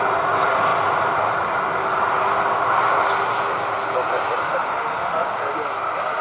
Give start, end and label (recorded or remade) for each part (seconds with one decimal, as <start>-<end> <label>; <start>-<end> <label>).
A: 0.0-4.4 recorded; 4.4-5.3 remade; 5.3-6.2 recorded